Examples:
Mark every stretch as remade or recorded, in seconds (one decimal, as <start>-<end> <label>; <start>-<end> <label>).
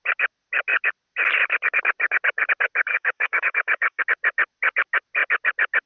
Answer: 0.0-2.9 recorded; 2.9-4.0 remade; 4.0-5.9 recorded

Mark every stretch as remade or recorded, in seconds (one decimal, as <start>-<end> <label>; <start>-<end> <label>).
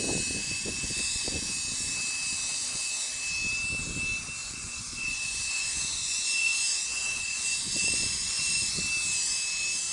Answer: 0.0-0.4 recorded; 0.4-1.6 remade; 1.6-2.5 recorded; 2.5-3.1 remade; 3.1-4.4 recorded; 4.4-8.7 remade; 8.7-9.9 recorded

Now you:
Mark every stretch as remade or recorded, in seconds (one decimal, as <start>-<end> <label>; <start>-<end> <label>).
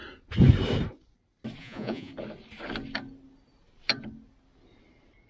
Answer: 0.0-1.6 recorded; 1.6-2.1 remade; 2.1-5.3 recorded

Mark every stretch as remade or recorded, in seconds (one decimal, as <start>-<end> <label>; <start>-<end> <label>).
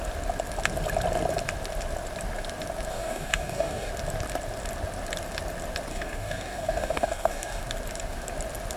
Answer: 0.0-2.9 recorded; 2.9-3.9 remade; 3.9-5.9 recorded; 5.9-7.6 remade; 7.6-8.8 recorded